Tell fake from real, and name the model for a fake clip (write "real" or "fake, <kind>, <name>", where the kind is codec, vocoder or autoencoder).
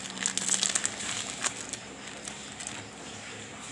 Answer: real